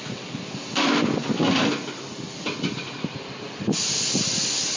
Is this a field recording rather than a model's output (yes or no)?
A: yes